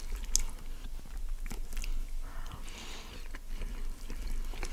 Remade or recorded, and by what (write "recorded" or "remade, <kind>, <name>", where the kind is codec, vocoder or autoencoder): recorded